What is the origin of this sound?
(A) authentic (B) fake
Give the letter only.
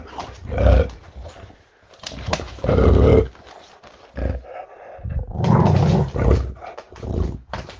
A